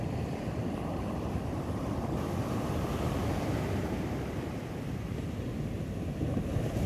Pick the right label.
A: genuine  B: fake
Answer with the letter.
B